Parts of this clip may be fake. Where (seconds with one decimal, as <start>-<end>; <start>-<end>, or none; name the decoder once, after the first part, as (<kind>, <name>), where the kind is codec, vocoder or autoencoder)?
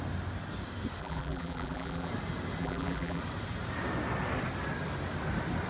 1.0-2.1 (vocoder, BigVGAN v2); 2.6-3.2